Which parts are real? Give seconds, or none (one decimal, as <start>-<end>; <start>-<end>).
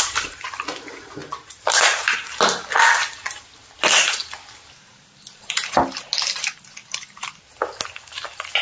0.0-1.2; 2.1-8.6